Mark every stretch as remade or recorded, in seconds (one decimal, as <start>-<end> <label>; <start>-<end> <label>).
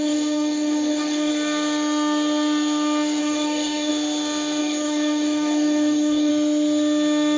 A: 0.0-1.3 remade; 1.3-3.2 recorded; 3.2-3.9 remade; 3.9-4.6 recorded; 4.6-6.3 remade; 6.3-7.4 recorded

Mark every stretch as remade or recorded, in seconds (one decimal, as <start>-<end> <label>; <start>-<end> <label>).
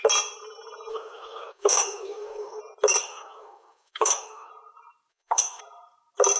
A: 0.0-0.9 recorded; 0.9-2.6 remade; 2.6-3.0 recorded; 3.0-4.5 remade; 4.5-5.1 recorded; 5.1-5.6 remade; 5.6-6.4 recorded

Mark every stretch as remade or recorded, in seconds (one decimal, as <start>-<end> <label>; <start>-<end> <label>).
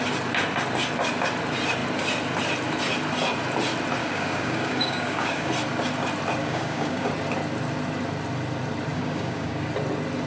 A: 0.0-4.0 recorded; 4.0-5.5 remade; 5.5-6.4 recorded; 6.4-7.1 remade; 7.1-8.9 recorded; 8.9-9.7 remade; 9.7-10.3 recorded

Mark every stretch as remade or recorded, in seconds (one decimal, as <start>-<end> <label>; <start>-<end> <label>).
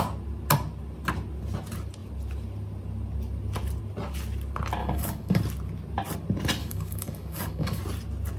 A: 0.0-4.8 recorded; 4.8-5.4 remade; 5.4-6.6 recorded; 6.6-7.8 remade; 7.8-8.4 recorded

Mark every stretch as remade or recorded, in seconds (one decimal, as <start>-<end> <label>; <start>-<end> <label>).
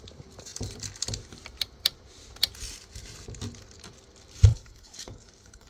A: 0.0-4.5 recorded; 4.5-5.7 remade